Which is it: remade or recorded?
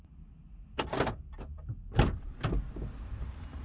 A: recorded